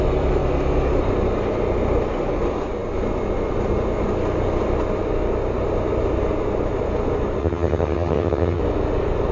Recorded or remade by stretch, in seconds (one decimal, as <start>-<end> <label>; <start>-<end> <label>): 0.0-7.4 recorded; 7.4-8.6 remade; 8.6-9.3 recorded